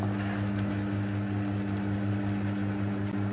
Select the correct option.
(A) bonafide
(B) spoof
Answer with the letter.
A